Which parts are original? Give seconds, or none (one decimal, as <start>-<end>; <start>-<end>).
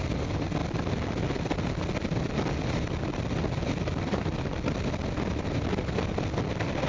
0.0-6.9